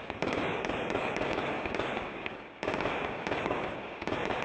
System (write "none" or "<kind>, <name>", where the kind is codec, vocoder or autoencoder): codec, DAC